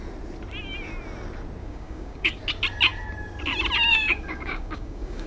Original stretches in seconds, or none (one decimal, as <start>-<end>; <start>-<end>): 0.0-1.6; 2.4-3.9